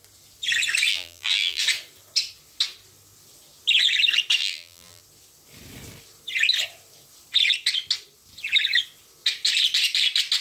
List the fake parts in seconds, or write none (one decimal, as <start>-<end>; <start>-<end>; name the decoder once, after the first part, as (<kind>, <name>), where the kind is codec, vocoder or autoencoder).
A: 0.9-1.6 (vocoder, BigVGAN v2); 4.4-5.0

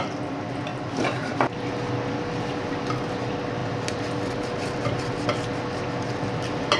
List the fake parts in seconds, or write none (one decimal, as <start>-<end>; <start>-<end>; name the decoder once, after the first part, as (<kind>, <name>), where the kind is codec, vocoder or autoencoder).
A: none